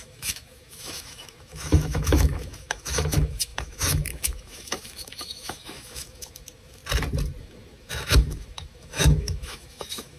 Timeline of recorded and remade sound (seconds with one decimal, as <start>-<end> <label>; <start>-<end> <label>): 0.0-6.8 remade; 6.8-7.4 recorded; 7.4-10.2 remade